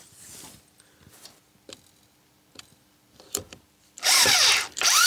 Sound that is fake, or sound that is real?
fake